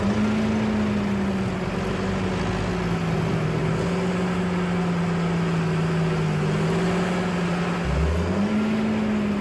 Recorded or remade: recorded